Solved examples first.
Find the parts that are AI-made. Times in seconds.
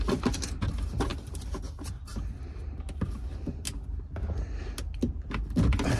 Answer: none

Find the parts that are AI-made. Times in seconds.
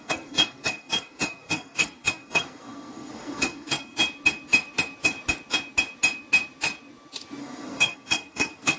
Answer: 0.0-4.0; 7.4-8.8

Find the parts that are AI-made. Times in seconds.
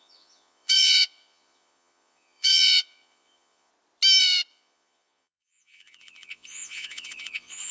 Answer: 0.0-3.7; 4.5-7.7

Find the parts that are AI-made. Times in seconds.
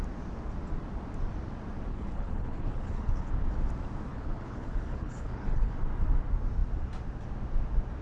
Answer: 1.9-3.3; 4.1-5.7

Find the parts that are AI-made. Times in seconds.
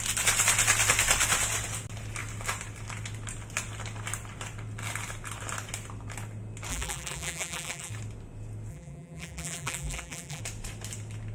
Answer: 6.7-7.9; 8.7-10.4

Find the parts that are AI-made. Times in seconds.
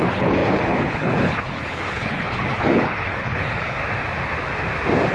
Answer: 0.0-3.8